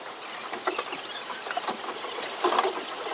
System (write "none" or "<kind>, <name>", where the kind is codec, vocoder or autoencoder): none